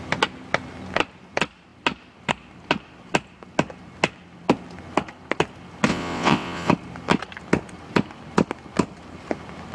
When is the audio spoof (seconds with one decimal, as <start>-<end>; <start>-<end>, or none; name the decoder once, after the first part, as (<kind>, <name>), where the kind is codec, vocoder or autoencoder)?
5.9-6.7 (vocoder, WaveNeXt)